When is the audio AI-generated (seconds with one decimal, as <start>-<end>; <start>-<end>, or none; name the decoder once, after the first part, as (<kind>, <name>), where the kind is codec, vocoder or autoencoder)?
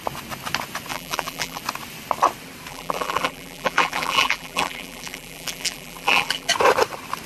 0.9-1.6 (vocoder, BigVGAN v2); 2.7-6.5